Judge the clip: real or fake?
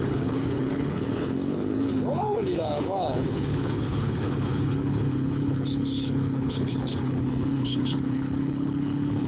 fake